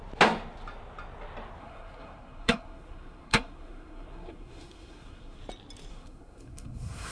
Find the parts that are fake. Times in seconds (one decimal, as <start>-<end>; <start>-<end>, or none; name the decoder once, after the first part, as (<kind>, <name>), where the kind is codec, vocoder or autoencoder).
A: 1.6-5.4 (codec, SNAC); 5.9-7.1